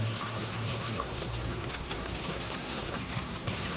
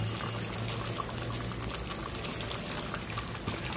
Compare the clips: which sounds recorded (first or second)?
second